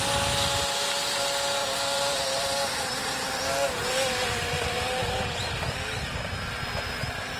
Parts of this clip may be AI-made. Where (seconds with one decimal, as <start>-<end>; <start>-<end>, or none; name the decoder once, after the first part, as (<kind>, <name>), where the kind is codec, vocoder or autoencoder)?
1.6-3.4 (vocoder, BigVGAN v2)